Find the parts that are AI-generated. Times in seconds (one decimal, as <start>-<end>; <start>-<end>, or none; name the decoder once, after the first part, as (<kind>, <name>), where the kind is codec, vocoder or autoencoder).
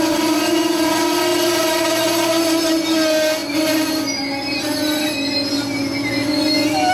none